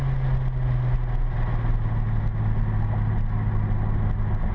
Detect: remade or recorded recorded